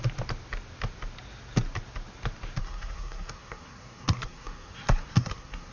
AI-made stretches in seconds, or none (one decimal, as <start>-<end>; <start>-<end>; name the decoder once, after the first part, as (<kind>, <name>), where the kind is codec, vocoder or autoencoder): 2.6-5.7 (codec, SNAC)